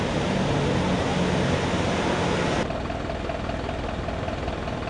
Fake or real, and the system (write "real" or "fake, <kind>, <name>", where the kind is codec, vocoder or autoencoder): real